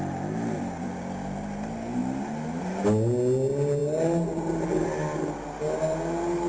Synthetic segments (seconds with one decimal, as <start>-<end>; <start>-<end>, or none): none